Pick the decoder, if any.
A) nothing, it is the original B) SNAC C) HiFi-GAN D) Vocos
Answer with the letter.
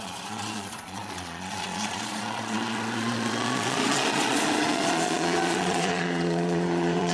D